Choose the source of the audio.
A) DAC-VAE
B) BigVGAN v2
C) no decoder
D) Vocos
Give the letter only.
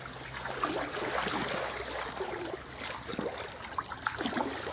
C